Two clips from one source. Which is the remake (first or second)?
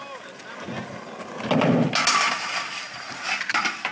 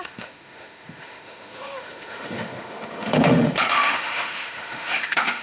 second